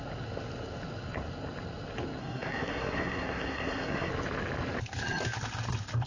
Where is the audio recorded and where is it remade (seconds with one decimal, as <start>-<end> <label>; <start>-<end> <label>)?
0.0-2.2 recorded; 2.2-4.1 remade; 4.1-6.1 recorded